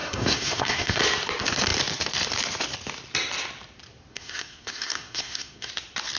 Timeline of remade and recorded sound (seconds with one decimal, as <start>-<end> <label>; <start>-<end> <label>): 0.0-1.0 remade; 1.0-4.1 recorded; 4.1-5.7 remade; 5.7-6.2 recorded